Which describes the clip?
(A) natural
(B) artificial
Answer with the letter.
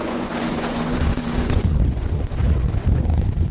B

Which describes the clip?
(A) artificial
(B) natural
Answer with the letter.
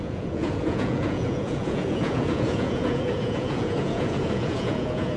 A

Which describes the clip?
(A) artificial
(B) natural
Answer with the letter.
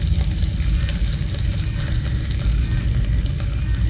B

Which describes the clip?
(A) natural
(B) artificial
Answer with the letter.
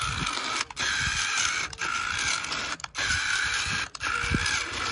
A